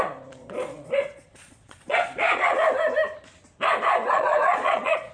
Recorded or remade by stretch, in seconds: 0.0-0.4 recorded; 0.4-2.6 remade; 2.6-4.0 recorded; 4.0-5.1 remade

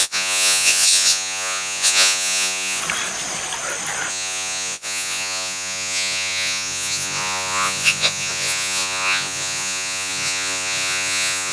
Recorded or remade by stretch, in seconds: 0.0-2.8 remade; 2.8-4.1 recorded; 4.1-11.5 remade

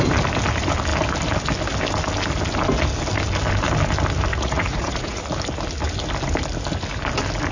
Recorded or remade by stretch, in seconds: 0.0-4.3 recorded; 4.3-5.2 remade; 5.2-7.5 recorded

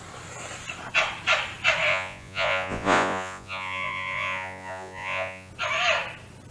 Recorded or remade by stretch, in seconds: 0.0-1.9 recorded; 1.9-5.5 remade; 5.5-6.5 recorded